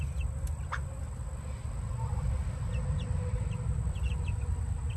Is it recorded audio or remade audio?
recorded